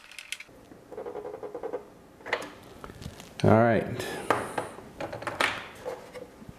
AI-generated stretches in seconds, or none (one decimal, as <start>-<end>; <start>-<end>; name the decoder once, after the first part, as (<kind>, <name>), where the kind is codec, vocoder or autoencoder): none